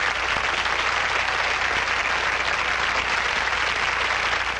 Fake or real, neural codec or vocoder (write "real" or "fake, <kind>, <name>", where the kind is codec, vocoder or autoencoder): real